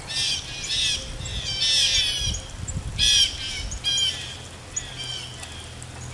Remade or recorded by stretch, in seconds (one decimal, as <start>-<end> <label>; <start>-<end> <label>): 0.0-6.1 recorded